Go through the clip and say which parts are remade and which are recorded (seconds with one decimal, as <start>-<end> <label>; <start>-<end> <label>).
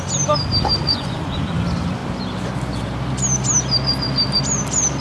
0.0-0.8 recorded; 0.8-1.5 remade; 1.5-5.0 recorded